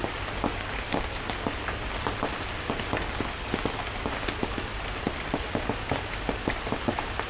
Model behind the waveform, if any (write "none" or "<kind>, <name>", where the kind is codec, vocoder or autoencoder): none